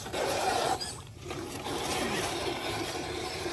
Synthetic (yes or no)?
yes